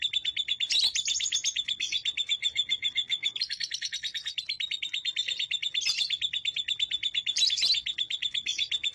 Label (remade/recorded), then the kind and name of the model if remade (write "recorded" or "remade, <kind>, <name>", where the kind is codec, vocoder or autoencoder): recorded